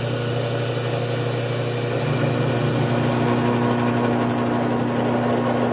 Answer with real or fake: real